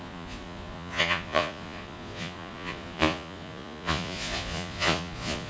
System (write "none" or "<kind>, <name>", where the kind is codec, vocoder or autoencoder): vocoder, Vocos